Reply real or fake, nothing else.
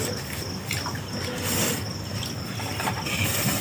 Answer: real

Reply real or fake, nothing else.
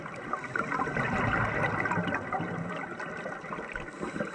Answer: real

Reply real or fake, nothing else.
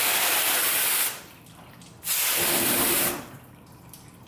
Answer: fake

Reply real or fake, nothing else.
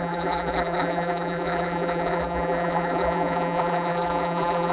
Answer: fake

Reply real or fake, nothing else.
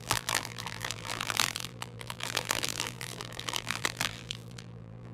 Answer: fake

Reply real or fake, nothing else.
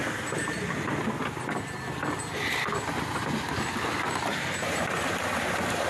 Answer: real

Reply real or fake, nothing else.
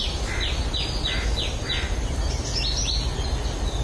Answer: real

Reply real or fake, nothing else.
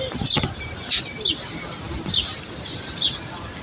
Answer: real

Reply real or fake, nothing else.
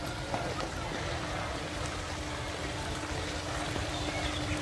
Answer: real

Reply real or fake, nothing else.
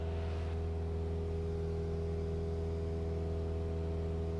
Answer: real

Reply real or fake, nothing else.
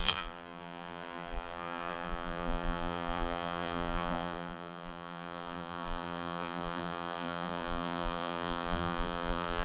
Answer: fake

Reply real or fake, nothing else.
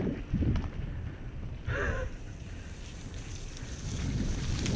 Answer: real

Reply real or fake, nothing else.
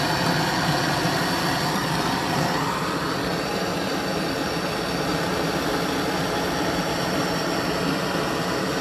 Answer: fake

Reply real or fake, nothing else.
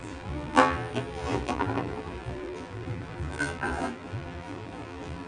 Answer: fake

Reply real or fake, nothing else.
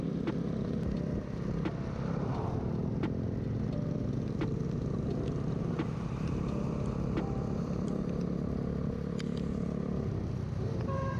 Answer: fake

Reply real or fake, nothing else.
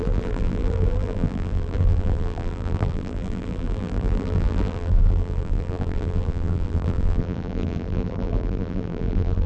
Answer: fake